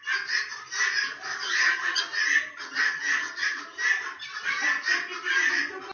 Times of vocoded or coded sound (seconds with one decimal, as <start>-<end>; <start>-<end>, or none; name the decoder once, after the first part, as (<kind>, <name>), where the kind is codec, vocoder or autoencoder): 1.3-2.0 (vocoder, HiFi-GAN); 2.5-3.6